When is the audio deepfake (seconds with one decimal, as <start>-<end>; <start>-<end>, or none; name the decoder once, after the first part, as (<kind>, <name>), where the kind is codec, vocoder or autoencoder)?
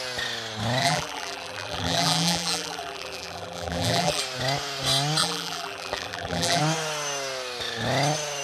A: 0.8-4.2 (vocoder, BigVGAN v2); 5.2-6.6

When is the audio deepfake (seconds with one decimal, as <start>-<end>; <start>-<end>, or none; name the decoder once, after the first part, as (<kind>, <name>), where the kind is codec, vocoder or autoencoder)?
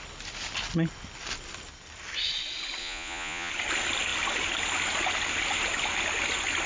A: 2.8-3.5 (vocoder, Vocos)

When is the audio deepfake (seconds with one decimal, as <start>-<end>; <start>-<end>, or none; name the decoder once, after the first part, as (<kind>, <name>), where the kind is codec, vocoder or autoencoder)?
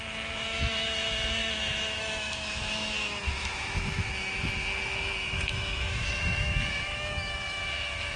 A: 0.0-8.2 (autoencoder, DAC-VAE)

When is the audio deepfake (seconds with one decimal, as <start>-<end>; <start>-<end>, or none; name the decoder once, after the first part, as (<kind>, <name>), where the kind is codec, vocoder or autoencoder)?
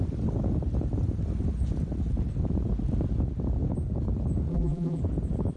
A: 4.5-5.0 (vocoder, BigVGAN v2)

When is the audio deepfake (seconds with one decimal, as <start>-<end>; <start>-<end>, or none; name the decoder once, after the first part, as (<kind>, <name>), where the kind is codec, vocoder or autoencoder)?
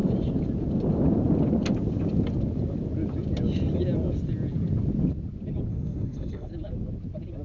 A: 5.7-6.5 (codec, SNAC)